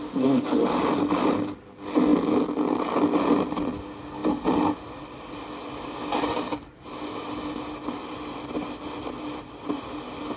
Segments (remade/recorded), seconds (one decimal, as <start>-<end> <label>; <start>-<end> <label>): 0.0-10.4 recorded